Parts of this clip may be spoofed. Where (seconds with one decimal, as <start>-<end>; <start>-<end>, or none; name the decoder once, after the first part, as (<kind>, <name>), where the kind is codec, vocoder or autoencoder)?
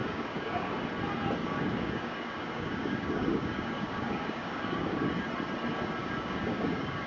0.0-0.7 (codec, DAC); 1.4-5.1; 6.0-7.1